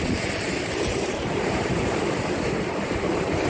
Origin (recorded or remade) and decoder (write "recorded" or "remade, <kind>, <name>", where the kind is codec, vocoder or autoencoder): remade, vocoder, BigVGAN v2